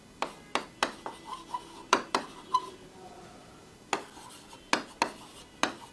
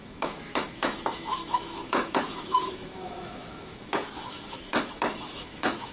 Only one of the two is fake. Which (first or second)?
second